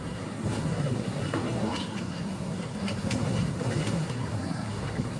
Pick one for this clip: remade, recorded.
remade